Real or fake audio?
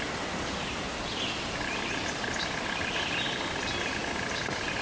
real